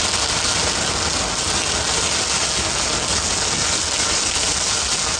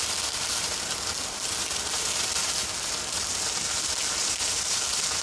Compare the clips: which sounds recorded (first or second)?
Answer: first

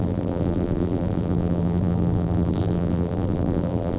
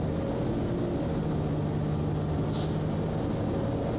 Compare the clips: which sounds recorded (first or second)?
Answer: second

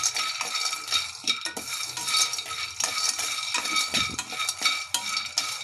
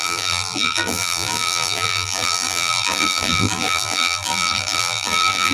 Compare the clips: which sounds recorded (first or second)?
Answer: first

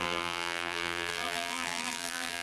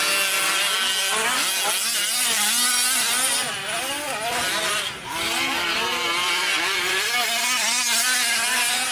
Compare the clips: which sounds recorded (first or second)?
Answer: second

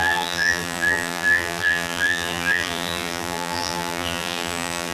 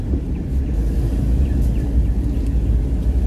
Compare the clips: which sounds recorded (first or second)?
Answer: second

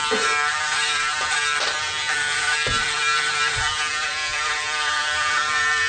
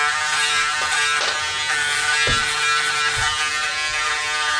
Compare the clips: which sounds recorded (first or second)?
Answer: second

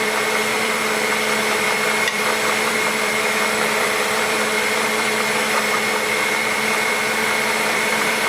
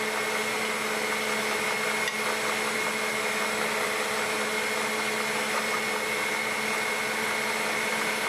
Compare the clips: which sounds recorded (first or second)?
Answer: second